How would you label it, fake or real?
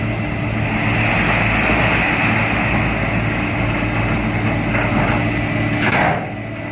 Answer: real